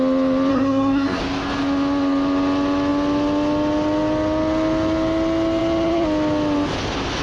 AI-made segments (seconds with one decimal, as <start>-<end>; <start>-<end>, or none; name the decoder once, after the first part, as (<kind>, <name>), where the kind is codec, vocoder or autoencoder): 0.5-1.2 (codec, SNAC)